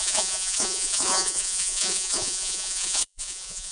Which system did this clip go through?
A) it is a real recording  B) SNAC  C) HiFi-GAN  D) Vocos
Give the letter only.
D